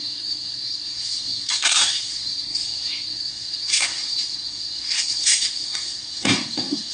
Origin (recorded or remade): remade